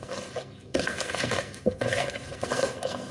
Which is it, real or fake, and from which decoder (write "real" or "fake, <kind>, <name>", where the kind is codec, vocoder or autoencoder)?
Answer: fake, codec, SNAC